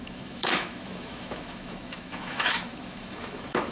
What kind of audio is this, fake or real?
fake